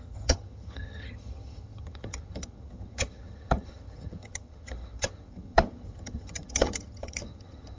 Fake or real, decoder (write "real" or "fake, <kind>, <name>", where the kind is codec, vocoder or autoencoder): fake, vocoder, HiFi-GAN